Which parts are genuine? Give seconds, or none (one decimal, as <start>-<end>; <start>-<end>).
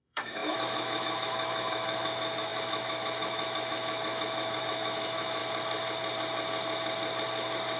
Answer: 5.4-7.8